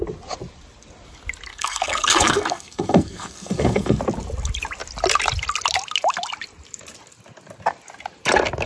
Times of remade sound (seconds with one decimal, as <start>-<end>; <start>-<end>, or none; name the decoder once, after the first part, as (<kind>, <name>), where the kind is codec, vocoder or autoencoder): 1.5-4.0 (codec, SNAC)